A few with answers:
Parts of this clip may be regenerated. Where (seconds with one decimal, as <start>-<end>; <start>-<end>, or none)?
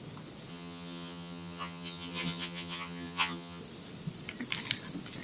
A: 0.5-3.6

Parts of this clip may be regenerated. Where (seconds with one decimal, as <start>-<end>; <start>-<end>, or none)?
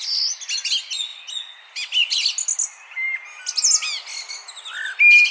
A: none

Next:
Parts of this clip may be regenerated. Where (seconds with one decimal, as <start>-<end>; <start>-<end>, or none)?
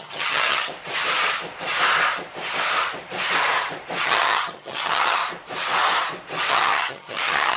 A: 0.0-0.7; 4.0-5.2; 6.5-7.6